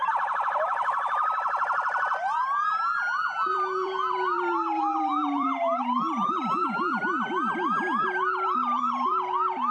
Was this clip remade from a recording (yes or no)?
yes